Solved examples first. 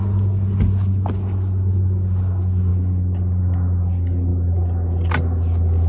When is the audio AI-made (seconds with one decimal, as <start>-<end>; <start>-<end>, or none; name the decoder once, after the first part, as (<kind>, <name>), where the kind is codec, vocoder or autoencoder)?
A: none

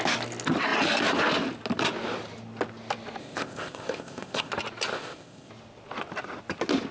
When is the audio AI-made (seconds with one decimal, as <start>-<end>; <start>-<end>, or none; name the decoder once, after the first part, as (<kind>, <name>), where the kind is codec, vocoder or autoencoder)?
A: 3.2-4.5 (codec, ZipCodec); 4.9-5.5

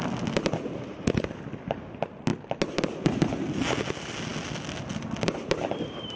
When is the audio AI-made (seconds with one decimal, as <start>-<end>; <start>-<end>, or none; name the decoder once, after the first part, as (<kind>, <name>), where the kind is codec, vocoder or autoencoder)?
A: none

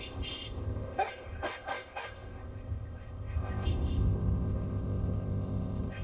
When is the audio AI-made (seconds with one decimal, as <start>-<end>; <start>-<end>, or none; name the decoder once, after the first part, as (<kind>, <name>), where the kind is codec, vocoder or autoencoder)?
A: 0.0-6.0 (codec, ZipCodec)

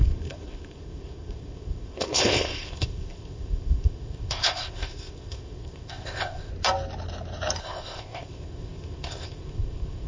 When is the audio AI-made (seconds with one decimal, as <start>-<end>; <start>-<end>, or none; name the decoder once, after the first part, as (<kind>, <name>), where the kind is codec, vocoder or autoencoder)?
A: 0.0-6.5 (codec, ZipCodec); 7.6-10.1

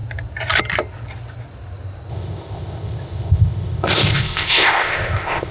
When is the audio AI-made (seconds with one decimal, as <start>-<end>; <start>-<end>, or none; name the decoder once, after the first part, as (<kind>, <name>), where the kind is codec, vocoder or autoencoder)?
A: 2.1-5.5 (codec, ZipCodec)

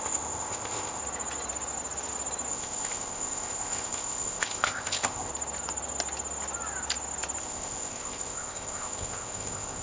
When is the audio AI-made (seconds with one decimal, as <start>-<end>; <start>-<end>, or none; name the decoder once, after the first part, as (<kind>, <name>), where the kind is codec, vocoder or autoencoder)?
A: 0.0-1.0 (codec, ZipCodec); 2.5-5.3; 7.4-9.8